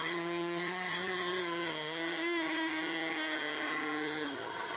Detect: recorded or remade remade